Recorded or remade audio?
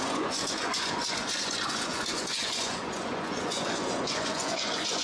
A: remade